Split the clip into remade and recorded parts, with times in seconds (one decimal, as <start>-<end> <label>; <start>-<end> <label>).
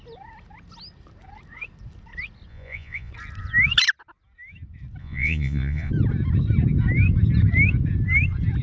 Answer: 0.0-2.5 recorded; 2.5-3.1 remade; 3.1-5.0 recorded; 5.0-5.9 remade; 5.9-8.6 recorded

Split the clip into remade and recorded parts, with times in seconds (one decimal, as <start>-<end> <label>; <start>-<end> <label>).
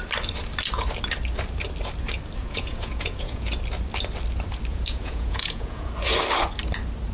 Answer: 0.0-2.4 recorded; 2.4-3.6 remade; 3.6-4.7 recorded; 4.7-5.9 remade; 5.9-7.1 recorded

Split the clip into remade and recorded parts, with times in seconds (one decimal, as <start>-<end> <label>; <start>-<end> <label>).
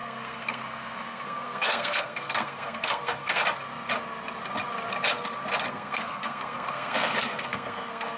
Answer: 0.0-3.4 remade; 3.4-5.7 recorded; 5.7-8.2 remade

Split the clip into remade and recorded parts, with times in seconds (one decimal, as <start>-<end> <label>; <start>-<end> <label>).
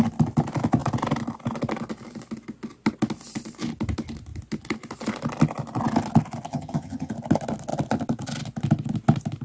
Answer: 0.0-6.5 recorded; 6.5-7.1 remade; 7.1-9.4 recorded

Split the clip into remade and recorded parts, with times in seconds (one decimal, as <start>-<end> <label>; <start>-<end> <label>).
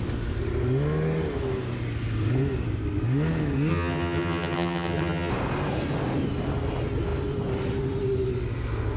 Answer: 0.0-3.7 recorded; 3.7-5.3 remade; 5.3-9.0 recorded